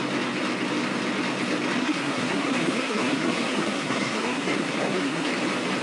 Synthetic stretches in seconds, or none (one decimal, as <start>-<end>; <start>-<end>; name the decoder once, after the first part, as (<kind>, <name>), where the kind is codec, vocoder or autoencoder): 1.8-5.3 (codec, SNAC)